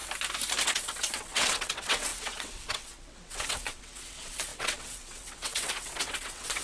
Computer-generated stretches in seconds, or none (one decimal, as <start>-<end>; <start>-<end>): 0.6-6.6

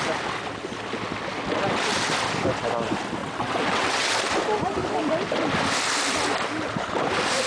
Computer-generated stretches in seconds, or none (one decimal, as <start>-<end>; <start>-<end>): 3.2-4.1

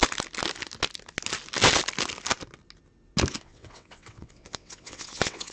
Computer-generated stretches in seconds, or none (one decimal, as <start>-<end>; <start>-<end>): 3.3-5.5

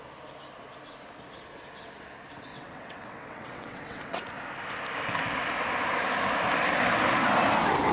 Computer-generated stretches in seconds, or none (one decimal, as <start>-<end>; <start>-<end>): 2.5-4.2

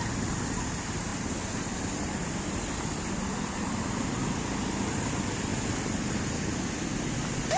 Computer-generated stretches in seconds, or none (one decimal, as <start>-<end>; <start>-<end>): none